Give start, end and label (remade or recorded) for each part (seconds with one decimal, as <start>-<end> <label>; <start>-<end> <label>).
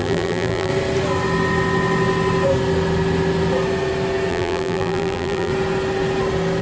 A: 0.0-0.7 remade; 0.7-4.3 recorded; 4.3-5.5 remade; 5.5-6.6 recorded